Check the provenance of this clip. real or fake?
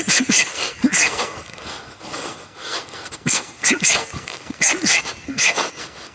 fake